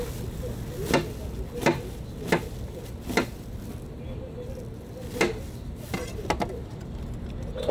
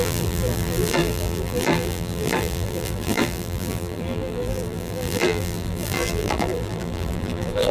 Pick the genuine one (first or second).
first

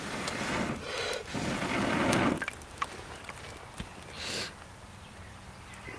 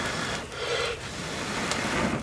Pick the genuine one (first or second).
second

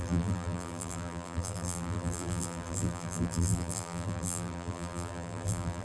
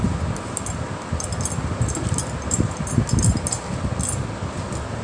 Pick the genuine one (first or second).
second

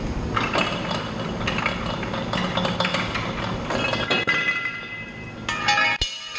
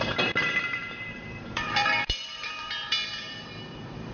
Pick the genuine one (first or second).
first